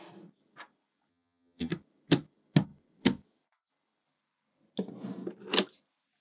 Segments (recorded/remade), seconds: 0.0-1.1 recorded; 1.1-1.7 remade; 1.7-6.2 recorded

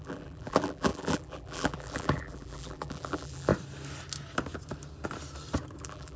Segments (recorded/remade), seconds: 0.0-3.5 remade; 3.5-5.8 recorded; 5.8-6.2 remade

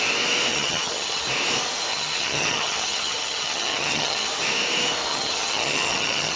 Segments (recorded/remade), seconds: 0.0-0.5 recorded; 0.5-1.2 remade; 1.2-1.9 recorded; 1.9-4.3 remade; 4.3-5.1 recorded; 5.1-6.4 remade

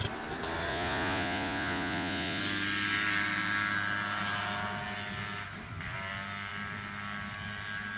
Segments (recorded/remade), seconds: 0.0-0.7 recorded; 0.7-2.4 remade; 2.4-8.0 recorded

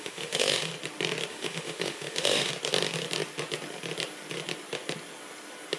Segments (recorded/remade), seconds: 0.0-0.7 remade; 0.7-1.3 recorded; 1.3-2.5 remade; 2.5-5.8 recorded

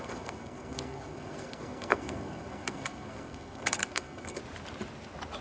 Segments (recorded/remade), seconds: 0.0-4.4 remade; 4.4-5.4 recorded

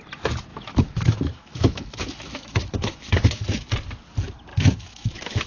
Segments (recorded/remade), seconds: 0.0-0.5 recorded; 0.5-3.7 remade; 3.7-4.5 recorded; 4.5-5.5 remade

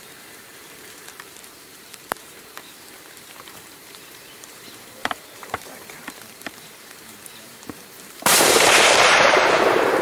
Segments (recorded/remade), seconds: 0.0-10.0 remade